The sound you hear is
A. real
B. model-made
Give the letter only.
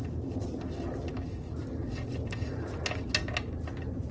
A